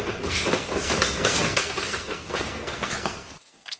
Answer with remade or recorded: remade